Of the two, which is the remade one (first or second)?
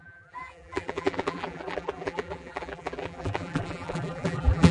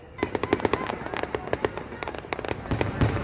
first